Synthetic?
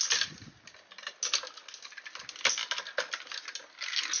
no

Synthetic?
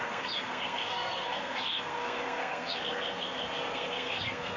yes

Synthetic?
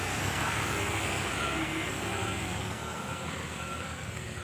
yes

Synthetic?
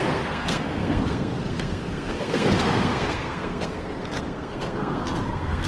yes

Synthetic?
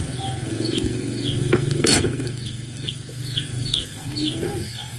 yes